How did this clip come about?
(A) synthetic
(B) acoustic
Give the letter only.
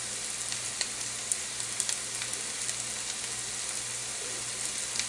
B